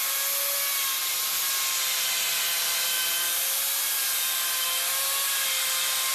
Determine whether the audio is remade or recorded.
recorded